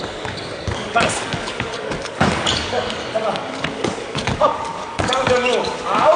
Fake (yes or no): yes